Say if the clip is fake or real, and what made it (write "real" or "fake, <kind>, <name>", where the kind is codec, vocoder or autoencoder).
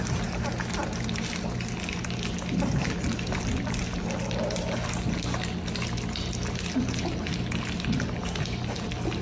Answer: real